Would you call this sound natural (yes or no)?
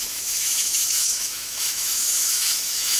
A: no